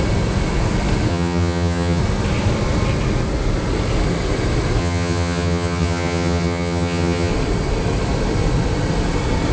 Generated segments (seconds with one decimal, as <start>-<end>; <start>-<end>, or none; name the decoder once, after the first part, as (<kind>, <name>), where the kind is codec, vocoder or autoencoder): 1.1-2.0 (vocoder, HiFi-GAN); 4.8-7.3